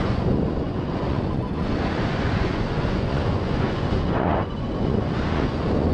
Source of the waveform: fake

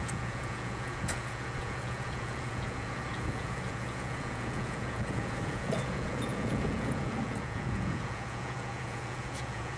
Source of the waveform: fake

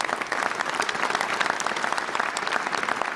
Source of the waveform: real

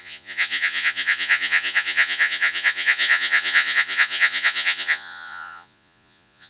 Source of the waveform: fake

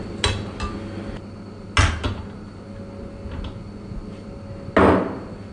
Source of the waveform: real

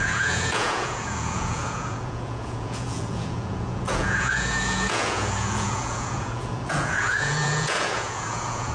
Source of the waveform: fake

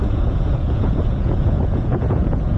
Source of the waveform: fake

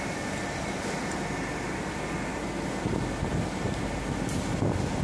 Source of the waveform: real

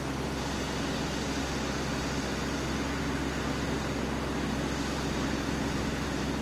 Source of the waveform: real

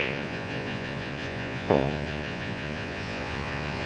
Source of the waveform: fake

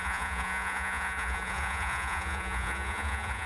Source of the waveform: fake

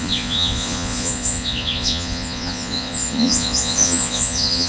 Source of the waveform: fake